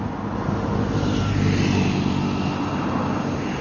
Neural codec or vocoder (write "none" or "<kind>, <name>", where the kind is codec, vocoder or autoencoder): none